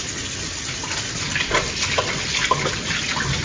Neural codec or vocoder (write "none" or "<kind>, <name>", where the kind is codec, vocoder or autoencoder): none